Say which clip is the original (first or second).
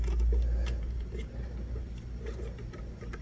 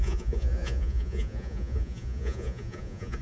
first